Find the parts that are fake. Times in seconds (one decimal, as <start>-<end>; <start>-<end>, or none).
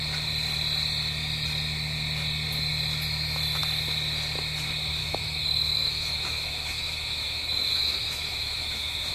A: 5.0-9.1